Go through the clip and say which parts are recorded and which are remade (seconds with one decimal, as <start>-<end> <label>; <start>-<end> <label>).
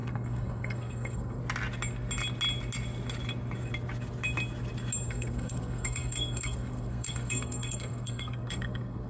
0.0-1.4 remade; 1.4-5.1 recorded; 5.1-9.1 remade